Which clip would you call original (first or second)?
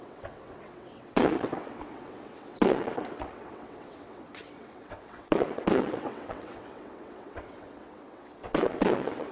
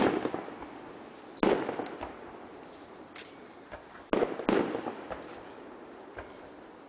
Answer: second